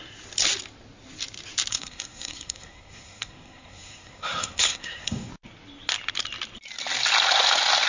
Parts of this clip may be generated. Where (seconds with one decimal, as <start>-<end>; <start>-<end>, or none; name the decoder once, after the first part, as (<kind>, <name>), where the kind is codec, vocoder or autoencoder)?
1.7-5.3 (codec, SNAC)